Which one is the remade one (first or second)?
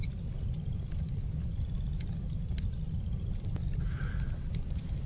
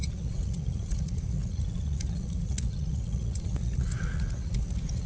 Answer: second